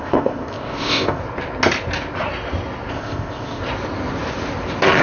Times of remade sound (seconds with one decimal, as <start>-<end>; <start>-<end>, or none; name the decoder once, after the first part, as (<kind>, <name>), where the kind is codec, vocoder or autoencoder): 0.0-1.2 (codec, ZipCodec); 2.9-3.6